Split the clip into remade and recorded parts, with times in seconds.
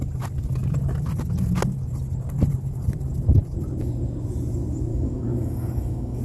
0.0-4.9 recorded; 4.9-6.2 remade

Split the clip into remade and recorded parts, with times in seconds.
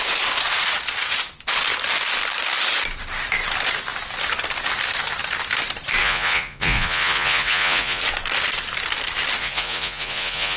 0.0-6.0 recorded; 6.0-8.0 remade; 8.0-9.4 recorded; 9.4-10.6 remade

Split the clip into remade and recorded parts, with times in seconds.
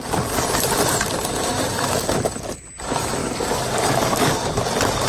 0.0-3.2 recorded; 3.2-4.6 remade; 4.6-5.1 recorded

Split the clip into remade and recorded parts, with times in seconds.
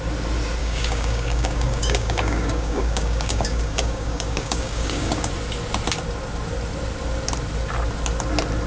0.0-0.6 recorded; 0.6-5.3 remade; 5.3-8.7 recorded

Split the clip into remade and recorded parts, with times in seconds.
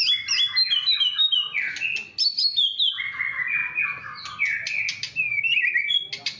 0.0-6.4 recorded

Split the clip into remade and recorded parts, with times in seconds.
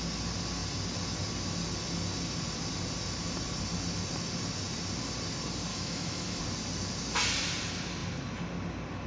0.0-5.7 recorded; 5.7-6.4 remade; 6.4-9.1 recorded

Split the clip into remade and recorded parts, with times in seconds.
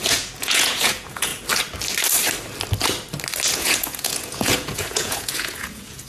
0.0-1.3 remade; 1.3-3.5 recorded; 3.5-6.1 remade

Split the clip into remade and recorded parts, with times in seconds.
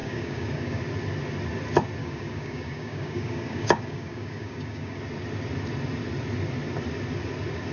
0.0-0.8 remade; 0.8-2.0 recorded; 2.0-5.0 remade; 5.0-7.7 recorded